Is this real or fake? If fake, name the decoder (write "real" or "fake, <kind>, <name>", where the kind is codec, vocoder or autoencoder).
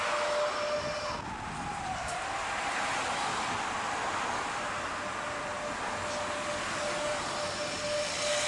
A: real